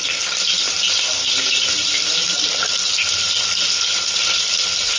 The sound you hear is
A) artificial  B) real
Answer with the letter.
B